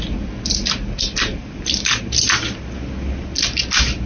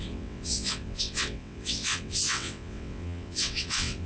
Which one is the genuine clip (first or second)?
first